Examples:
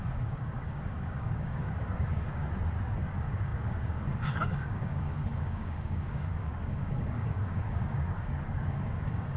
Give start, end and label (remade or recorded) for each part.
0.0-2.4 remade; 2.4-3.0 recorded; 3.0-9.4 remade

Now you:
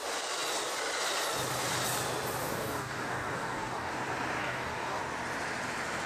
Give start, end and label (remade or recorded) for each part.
0.0-2.4 recorded; 2.4-3.9 remade; 3.9-4.4 recorded; 4.4-5.0 remade; 5.0-6.1 recorded